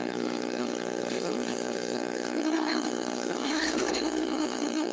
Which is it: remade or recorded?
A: remade